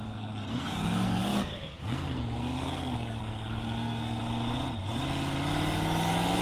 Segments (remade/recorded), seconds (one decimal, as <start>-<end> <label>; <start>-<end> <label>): 0.0-4.2 remade; 4.2-6.4 recorded